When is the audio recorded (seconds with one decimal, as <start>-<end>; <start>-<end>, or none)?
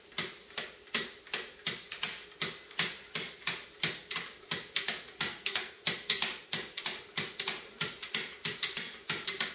0.0-5.3; 5.8-9.5